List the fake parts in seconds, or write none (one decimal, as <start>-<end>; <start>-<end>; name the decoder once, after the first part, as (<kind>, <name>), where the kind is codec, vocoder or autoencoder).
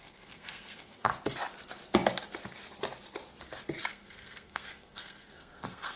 0.0-1.1 (codec, SNAC); 3.9-6.0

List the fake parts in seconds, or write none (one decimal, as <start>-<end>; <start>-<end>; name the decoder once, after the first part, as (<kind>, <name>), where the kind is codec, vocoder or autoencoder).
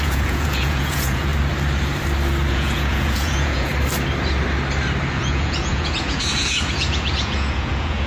0.0-1.3 (vocoder, Vocos); 2.5-3.7; 5.1-8.1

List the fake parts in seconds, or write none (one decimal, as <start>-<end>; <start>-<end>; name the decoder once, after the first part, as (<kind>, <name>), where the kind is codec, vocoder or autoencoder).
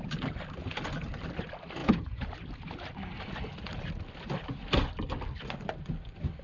1.8-2.3 (vocoder, Vocos)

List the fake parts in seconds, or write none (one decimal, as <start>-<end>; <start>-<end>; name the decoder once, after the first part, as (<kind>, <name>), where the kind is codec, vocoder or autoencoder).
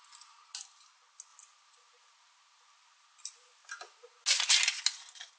none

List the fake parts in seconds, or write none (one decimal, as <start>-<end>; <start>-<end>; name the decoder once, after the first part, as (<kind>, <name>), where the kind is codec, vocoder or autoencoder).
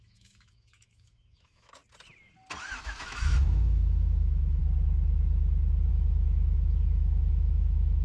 0.0-1.8 (autoencoder, DAC-VAE); 2.8-4.6; 5.9-8.0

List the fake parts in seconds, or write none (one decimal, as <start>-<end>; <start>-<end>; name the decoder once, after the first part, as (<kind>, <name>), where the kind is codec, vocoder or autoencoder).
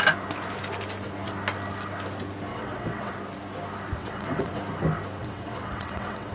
2.5-3.1 (vocoder, WaveNeXt); 4.0-4.6; 5.2-6.3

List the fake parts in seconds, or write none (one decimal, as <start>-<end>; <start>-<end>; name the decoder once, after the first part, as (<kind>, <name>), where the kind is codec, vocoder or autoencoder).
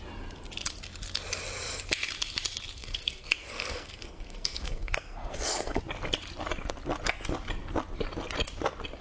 2.8-5.8 (codec, SNAC)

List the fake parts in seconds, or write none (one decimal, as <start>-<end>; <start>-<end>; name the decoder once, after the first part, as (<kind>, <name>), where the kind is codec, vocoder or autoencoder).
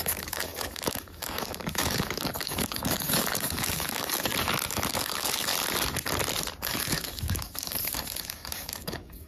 0.0-4.3 (codec, DAC); 4.9-5.5; 6.6-9.3